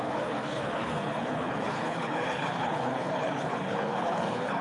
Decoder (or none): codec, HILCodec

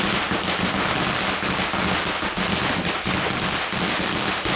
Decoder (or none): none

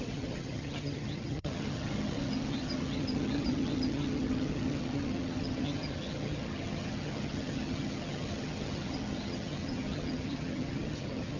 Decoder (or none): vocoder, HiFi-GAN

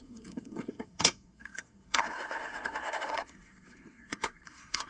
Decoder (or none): codec, SNAC